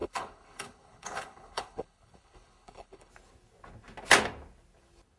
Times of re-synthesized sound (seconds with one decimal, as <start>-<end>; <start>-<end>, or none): 0.0-3.1